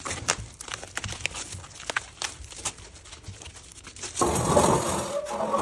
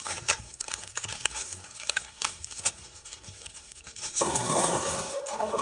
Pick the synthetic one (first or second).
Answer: second